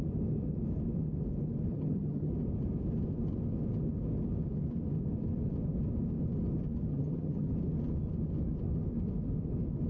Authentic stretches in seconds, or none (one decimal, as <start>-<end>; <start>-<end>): 0.0-1.7; 2.3-6.9; 7.5-9.9